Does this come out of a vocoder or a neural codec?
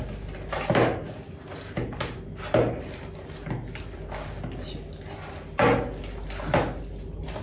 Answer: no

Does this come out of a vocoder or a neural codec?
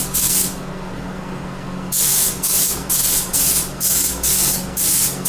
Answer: yes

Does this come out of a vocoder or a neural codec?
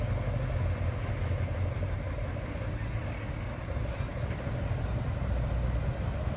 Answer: no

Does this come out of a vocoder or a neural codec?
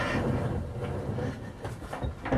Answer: no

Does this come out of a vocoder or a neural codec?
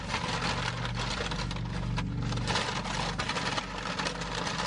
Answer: no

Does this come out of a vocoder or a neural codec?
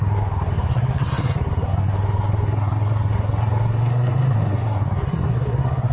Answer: yes